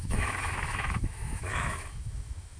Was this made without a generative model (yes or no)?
no